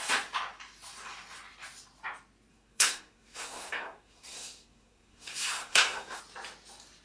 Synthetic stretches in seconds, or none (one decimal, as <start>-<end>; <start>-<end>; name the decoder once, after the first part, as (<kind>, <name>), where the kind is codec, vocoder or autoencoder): 2.5-6.2 (codec, SNAC)